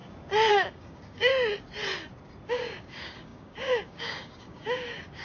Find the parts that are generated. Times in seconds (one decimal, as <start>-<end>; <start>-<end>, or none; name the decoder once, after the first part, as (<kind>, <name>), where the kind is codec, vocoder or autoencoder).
0.5-1.3 (codec, DAC); 2.5-5.2